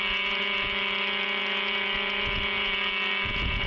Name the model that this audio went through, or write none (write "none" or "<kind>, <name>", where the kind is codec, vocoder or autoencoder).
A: vocoder, Vocos